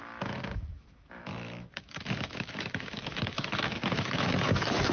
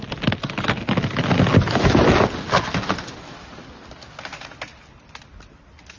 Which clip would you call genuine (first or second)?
second